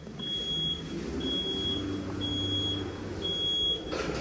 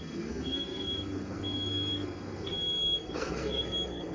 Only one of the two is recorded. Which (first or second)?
first